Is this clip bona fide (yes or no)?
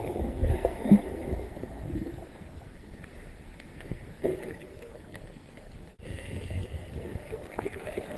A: no